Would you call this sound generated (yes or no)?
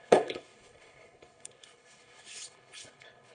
yes